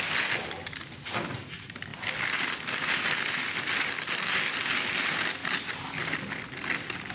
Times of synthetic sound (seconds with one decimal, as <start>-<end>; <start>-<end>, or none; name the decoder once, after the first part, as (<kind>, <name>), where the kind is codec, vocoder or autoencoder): 5.4-6.0 (vocoder, BigVGAN v2)